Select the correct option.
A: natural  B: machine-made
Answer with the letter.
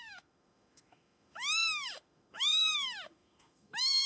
B